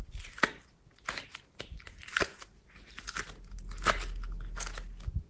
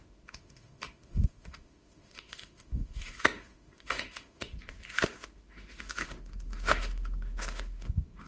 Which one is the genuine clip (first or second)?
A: first